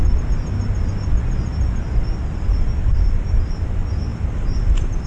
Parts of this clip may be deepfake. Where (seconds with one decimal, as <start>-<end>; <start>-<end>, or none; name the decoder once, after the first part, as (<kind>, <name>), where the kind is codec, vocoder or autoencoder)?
2.9-3.6 (vocoder, BigVGAN v2)